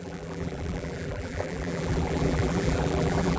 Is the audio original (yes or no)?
no